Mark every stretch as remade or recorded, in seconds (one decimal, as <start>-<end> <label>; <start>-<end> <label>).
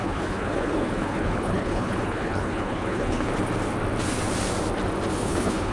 0.0-3.3 remade; 3.3-5.1 recorded; 5.1-5.7 remade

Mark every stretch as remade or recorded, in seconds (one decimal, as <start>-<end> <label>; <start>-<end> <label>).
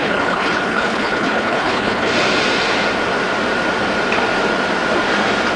0.0-2.1 remade; 2.1-5.6 recorded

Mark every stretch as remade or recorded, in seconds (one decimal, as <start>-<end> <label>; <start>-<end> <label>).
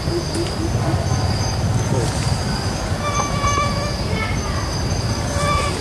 0.0-5.8 recorded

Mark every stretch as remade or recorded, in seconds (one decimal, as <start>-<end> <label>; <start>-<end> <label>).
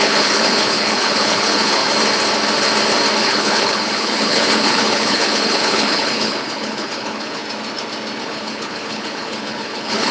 0.0-1.8 remade; 1.8-3.2 recorded; 3.2-7.4 remade; 7.4-8.2 recorded; 8.2-10.1 remade